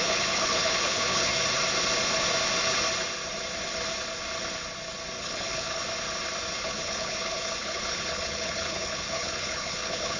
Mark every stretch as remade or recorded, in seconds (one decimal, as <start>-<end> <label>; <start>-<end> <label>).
0.0-1.3 remade; 1.3-5.2 recorded; 5.2-5.8 remade; 5.8-6.6 recorded; 6.6-10.2 remade